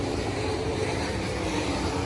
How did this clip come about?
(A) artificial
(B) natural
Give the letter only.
A